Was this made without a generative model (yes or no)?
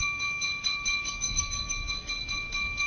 no